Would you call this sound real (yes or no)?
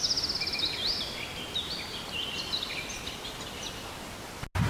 yes